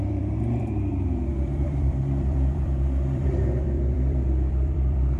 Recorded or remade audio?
remade